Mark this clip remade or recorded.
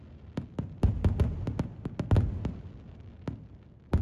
recorded